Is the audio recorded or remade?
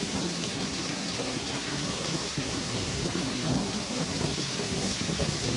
remade